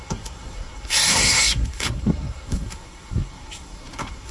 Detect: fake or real fake